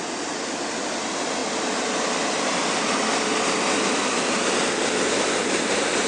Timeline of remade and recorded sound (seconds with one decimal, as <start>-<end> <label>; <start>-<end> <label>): 0.0-6.1 recorded

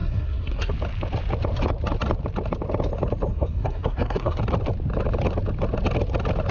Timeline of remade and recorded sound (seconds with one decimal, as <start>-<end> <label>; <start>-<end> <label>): 0.0-0.7 remade; 0.7-3.3 recorded; 3.3-4.4 remade; 4.4-6.5 recorded

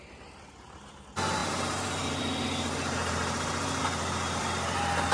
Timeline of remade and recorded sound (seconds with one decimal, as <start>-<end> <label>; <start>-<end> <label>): 0.0-5.1 remade